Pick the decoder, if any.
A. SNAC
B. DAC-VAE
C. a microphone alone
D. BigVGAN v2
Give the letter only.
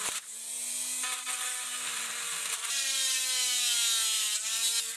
C